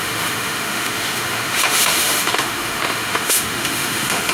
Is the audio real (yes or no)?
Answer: no